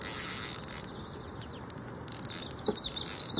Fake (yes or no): no